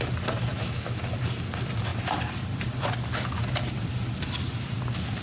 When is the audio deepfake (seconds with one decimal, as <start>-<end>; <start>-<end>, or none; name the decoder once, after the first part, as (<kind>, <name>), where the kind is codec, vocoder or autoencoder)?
0.5-1.0 (autoencoder, DAC-VAE)